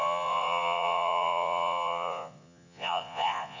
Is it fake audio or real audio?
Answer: fake